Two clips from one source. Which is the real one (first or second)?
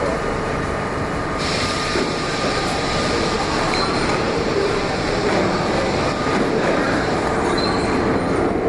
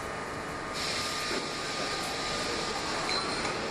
second